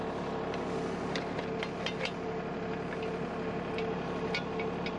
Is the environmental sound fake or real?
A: real